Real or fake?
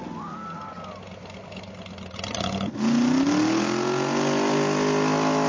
real